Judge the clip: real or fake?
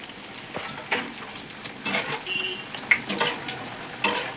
real